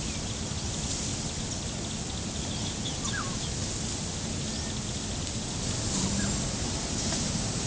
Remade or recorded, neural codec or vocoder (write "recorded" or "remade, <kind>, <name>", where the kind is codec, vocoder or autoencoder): recorded